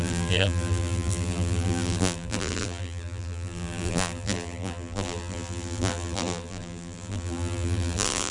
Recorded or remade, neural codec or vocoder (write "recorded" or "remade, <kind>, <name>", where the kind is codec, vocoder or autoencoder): remade, vocoder, BigVGAN v2